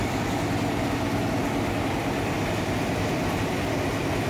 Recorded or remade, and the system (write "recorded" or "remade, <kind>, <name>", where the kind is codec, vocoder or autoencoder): recorded